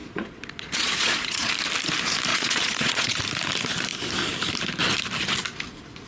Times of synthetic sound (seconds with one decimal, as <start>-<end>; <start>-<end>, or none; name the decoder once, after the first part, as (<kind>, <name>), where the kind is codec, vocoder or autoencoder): 0.0-1.5 (vocoder, Vocos); 2.3-3.2